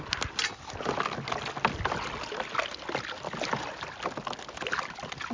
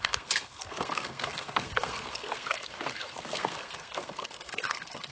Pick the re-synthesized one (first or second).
second